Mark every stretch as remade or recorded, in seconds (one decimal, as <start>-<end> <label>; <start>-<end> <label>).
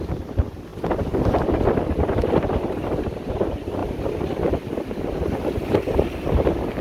0.0-6.8 recorded